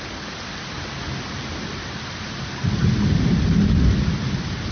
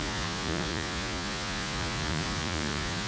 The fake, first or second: second